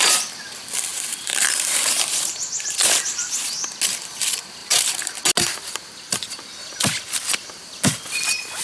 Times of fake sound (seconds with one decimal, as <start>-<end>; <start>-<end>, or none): 0.9-2.3; 4.6-5.2